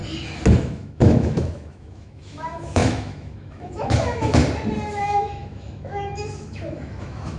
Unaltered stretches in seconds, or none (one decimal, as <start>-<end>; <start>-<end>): 0.0-0.6; 4.4-5.0